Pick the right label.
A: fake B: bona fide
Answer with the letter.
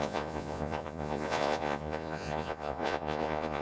A